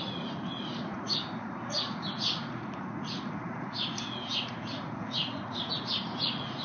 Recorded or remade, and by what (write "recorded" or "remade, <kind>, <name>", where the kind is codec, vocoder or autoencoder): remade, vocoder, Vocos